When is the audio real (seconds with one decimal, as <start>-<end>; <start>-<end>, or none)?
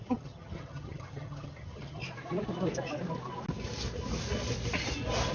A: 2.0-5.3